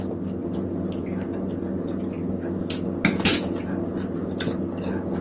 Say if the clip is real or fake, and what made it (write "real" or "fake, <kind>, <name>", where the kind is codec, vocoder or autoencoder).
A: real